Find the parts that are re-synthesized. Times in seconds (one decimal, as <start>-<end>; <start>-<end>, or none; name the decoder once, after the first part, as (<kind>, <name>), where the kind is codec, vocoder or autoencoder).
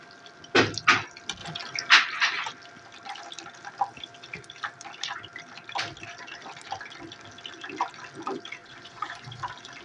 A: 8.6-9.4 (vocoder, Vocos)